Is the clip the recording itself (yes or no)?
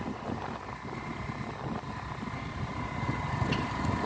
yes